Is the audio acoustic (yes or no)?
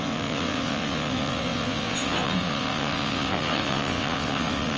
no